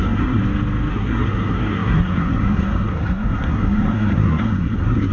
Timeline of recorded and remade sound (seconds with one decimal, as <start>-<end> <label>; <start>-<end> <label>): 0.0-0.4 remade; 0.4-0.9 recorded; 0.9-5.1 remade